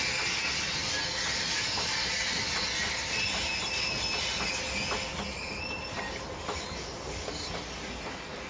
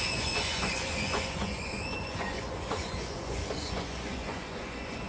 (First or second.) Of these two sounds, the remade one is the second